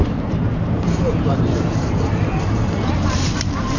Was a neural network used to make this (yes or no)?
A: yes